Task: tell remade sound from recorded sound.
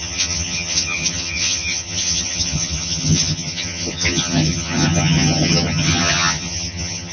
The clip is remade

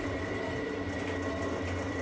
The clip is recorded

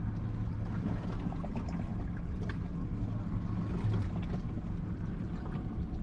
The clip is recorded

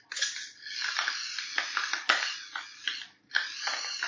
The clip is recorded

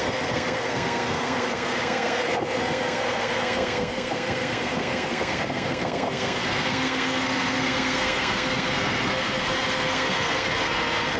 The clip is remade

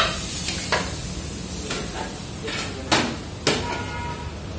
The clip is recorded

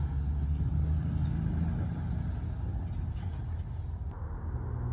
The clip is recorded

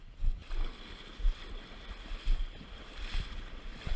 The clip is recorded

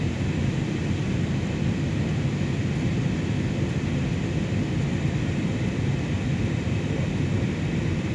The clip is recorded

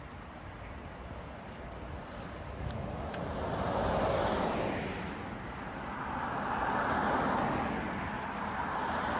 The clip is recorded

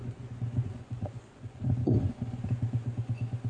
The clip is remade